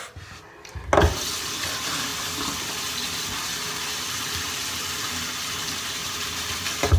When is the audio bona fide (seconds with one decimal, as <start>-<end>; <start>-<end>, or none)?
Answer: 0.0-6.0; 6.6-7.0